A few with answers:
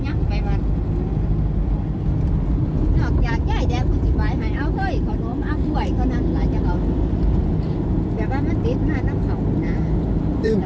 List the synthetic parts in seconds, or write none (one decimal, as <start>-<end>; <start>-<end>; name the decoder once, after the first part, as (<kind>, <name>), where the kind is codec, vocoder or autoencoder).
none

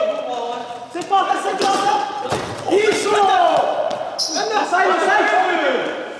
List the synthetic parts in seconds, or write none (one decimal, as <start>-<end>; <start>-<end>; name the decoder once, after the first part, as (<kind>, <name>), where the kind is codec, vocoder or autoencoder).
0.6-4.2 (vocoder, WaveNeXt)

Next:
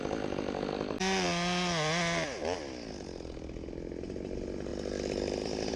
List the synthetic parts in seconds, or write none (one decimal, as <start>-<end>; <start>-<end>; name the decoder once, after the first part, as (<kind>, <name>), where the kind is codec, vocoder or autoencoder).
none

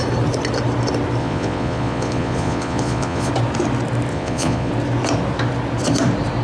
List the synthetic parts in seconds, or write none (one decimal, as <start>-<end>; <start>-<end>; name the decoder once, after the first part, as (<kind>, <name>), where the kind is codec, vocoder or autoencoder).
1.2-3.3 (vocoder, Vocos); 4.1-4.7

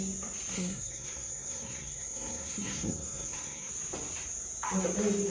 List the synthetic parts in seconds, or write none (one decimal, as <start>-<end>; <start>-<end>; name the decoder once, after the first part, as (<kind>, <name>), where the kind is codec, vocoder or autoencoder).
0.5-3.7 (codec, SNAC)

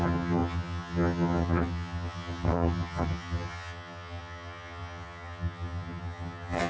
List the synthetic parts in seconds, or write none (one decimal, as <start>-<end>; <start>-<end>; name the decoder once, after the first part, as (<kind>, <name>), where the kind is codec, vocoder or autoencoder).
0.0-6.7 (vocoder, HiFi-GAN)

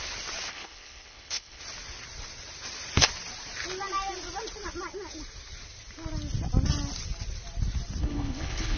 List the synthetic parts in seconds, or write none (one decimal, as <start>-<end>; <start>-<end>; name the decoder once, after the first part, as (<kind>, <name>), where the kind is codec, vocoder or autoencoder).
0.5-1.6 (codec, HILCodec); 8.0-8.8